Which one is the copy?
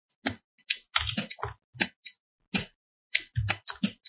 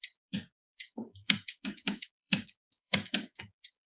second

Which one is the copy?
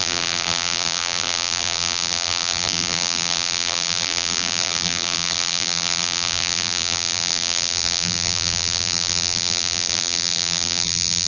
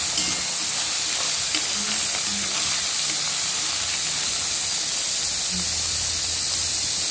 first